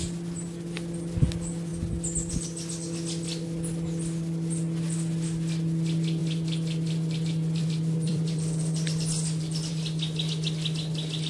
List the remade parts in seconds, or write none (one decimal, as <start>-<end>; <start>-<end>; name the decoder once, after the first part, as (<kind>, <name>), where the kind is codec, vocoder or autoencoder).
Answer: 6.2-9.7 (vocoder, BigVGAN v2)